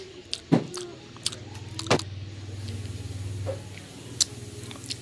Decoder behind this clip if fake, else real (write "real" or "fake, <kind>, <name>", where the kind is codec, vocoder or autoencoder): real